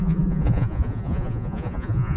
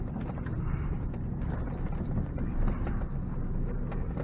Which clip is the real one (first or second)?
second